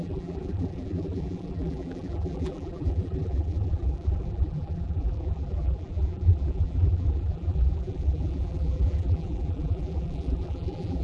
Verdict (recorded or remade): remade